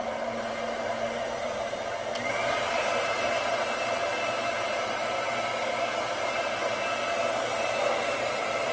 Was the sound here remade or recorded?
remade